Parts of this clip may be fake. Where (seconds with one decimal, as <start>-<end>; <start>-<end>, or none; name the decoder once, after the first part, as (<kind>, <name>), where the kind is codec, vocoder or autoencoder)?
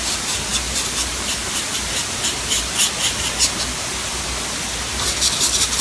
none